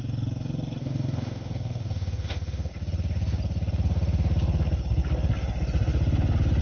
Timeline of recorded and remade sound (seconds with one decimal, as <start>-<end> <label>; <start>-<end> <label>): 0.0-0.8 recorded; 0.8-2.7 remade; 2.7-6.6 recorded